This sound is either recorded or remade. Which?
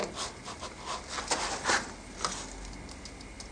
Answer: recorded